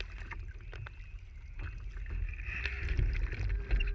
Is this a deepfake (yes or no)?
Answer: no